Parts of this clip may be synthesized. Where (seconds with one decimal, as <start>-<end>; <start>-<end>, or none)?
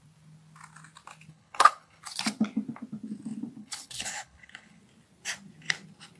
1.3-2.0; 3.6-4.8